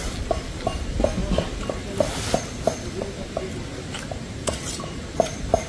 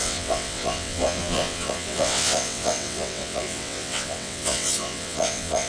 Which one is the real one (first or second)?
first